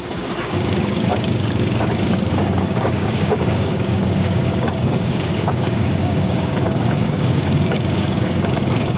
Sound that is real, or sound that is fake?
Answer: fake